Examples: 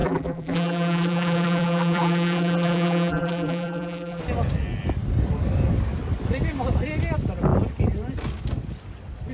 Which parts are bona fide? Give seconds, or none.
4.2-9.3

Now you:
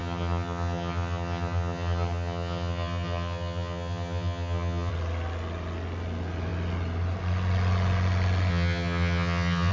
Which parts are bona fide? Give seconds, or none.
4.9-8.5

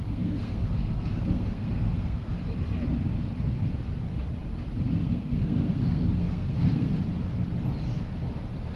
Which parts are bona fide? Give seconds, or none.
2.3-5.0; 6.9-8.8

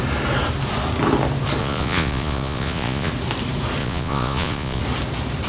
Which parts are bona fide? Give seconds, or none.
0.0-1.6; 3.1-3.8; 4.8-5.5

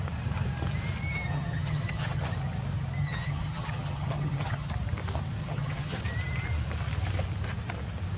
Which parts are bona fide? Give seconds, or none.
0.0-1.3; 2.2-3.0; 4.7-5.4; 6.0-8.2

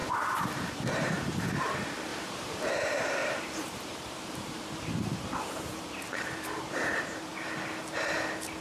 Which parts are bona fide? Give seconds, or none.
1.4-2.1; 2.7-3.2; 7.3-8.6

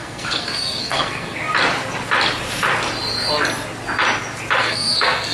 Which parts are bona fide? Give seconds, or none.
1.4-4.6